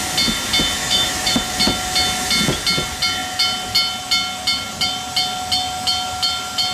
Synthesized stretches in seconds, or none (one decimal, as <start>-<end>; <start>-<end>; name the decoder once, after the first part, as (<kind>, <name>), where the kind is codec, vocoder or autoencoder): 0.8-1.3 (autoencoder, DAC-VAE)